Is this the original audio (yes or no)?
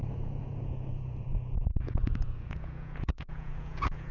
no